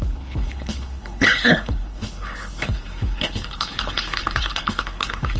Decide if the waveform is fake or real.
fake